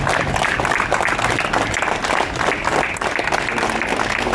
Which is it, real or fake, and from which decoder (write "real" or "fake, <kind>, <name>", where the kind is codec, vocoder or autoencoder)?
real